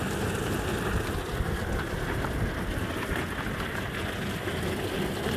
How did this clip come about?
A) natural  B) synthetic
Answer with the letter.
A